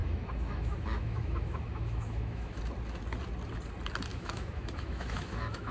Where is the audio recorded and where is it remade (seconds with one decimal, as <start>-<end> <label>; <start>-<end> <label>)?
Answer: 0.0-2.6 remade; 2.6-4.1 recorded; 4.1-5.7 remade

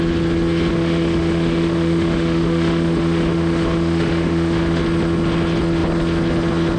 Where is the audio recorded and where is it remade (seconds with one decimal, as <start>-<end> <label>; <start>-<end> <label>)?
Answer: 0.0-0.7 recorded; 0.7-4.8 remade; 4.8-6.8 recorded

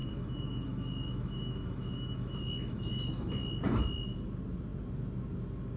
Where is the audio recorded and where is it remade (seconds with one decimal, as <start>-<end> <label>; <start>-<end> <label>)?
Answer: 0.0-3.3 remade; 3.3-5.8 recorded

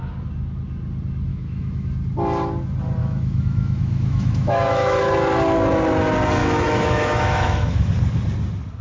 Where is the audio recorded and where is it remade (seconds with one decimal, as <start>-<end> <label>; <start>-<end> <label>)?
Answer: 0.0-1.3 recorded; 1.3-1.9 remade; 1.9-3.0 recorded; 3.0-5.0 remade; 5.0-6.4 recorded; 6.4-7.9 remade; 7.9-8.8 recorded